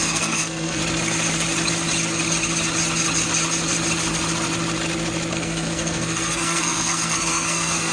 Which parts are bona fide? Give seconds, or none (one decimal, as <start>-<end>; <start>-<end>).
0.8-5.3